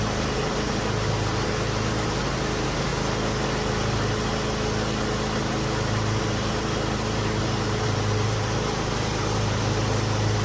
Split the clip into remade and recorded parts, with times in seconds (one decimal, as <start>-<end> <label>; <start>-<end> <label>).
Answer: 0.0-2.9 remade; 2.9-6.2 recorded; 6.2-10.4 remade